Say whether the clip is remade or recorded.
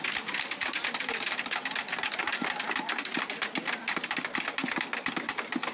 recorded